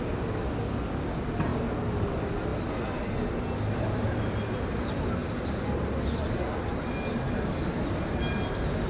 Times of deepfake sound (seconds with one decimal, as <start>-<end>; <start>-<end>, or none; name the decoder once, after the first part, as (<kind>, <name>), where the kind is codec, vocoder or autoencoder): none